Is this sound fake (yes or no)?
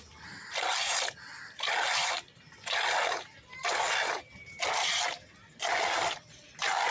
no